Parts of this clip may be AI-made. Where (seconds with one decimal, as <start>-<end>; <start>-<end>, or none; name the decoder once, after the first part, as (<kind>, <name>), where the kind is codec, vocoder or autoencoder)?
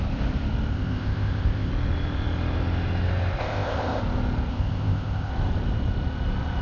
0.7-1.7 (codec, ZipCodec); 3.4-4.0; 4.5-5.3